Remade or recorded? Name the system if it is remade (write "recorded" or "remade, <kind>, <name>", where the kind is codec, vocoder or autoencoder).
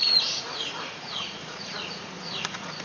remade, vocoder, Vocos